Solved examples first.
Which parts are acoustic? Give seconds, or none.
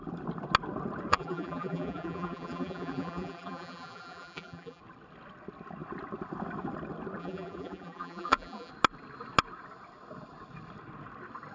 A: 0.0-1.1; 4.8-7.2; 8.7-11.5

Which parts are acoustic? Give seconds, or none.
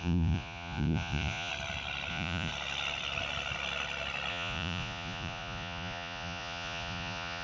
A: 1.5-2.1; 2.5-4.3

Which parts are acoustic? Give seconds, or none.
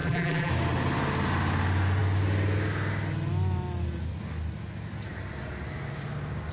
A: 0.5-6.5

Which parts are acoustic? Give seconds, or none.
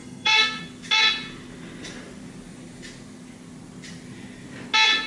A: 0.6-5.1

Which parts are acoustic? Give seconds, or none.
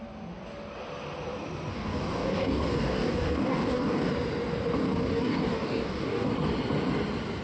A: 0.0-1.7; 4.1-4.8; 6.3-7.4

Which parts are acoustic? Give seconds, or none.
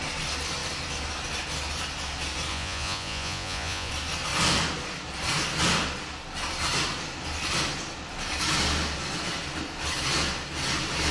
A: 0.0-2.5; 3.9-11.1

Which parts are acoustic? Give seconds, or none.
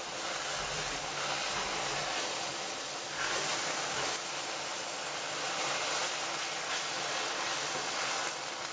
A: 0.0-8.7